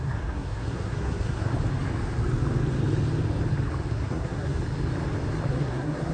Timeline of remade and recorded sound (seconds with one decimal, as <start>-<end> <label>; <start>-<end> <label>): 0.0-1.5 remade; 1.5-3.9 recorded; 3.9-4.6 remade; 4.6-5.5 recorded; 5.5-6.1 remade